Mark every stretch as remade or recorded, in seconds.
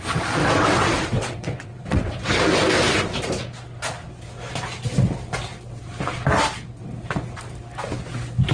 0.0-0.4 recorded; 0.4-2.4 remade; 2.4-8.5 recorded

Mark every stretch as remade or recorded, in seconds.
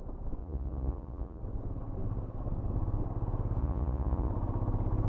0.0-0.4 recorded; 0.4-1.4 remade; 1.4-3.6 recorded; 3.6-4.3 remade; 4.3-5.1 recorded